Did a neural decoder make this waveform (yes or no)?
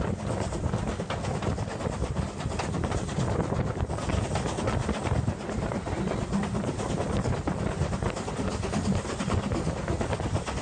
no